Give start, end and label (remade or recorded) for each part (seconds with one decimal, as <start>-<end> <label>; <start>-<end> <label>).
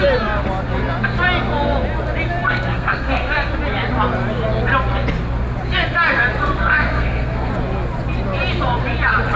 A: 0.0-2.4 recorded; 2.4-3.5 remade; 3.5-6.4 recorded; 6.4-7.5 remade; 7.5-9.4 recorded